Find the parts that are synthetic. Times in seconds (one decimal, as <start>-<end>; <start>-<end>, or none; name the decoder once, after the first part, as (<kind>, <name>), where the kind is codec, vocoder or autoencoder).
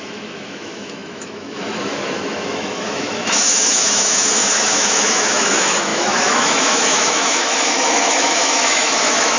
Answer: 0.0-9.4 (autoencoder, DAC-VAE)